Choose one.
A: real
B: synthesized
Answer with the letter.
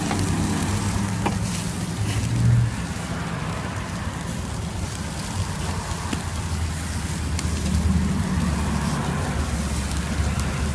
A